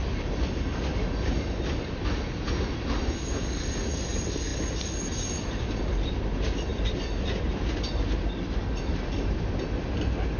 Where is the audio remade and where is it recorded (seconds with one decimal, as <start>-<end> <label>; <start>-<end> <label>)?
0.0-10.4 recorded